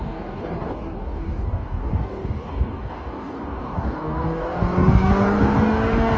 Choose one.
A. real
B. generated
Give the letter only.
B